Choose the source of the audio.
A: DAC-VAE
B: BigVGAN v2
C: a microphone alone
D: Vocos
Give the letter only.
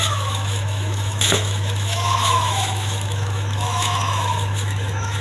A